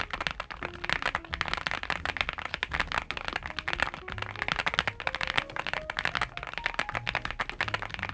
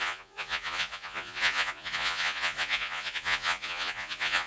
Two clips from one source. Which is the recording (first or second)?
first